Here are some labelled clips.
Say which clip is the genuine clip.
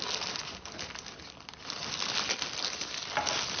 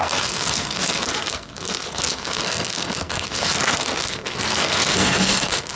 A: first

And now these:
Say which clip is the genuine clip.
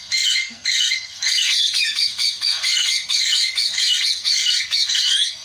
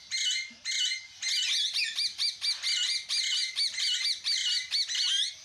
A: second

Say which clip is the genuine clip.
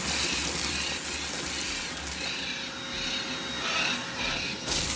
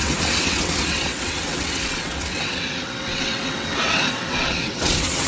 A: first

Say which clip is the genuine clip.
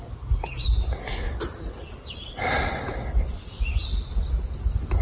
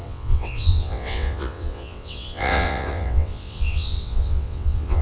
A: first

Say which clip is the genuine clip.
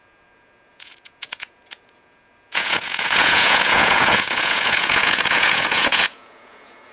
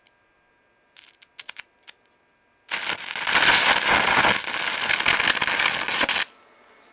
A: second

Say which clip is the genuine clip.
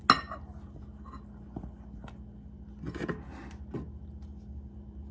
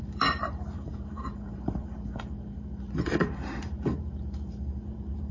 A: first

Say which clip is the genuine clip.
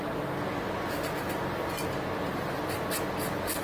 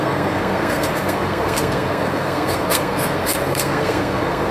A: first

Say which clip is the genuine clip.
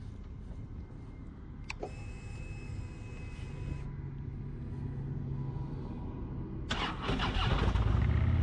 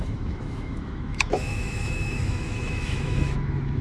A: first